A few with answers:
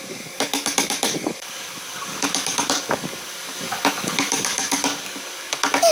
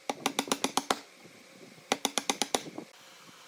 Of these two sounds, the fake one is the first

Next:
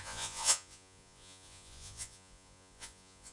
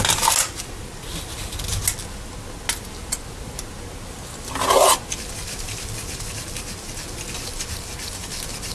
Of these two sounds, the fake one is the first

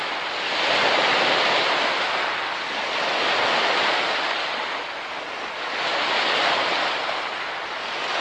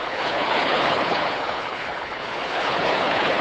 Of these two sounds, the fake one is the second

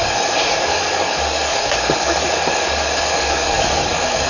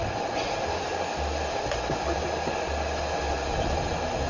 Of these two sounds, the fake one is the first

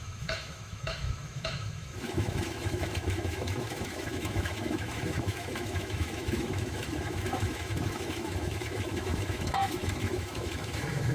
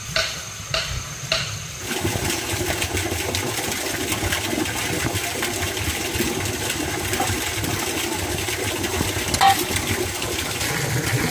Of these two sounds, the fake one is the first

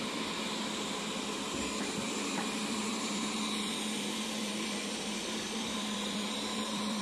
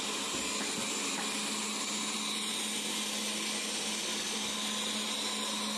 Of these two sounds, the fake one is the first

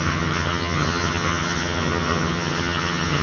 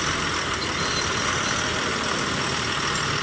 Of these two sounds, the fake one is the first